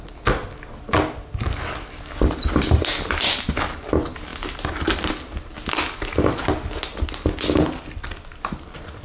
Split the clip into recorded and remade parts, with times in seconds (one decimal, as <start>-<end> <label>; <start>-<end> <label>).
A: 0.0-9.0 recorded